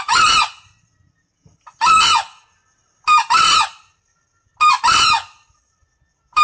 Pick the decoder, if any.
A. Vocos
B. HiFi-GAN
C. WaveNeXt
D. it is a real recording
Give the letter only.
D